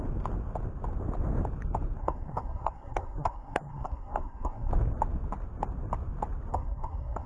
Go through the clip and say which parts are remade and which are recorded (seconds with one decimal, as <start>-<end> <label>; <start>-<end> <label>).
0.0-2.0 recorded; 2.0-4.7 remade; 4.7-6.5 recorded; 6.5-7.3 remade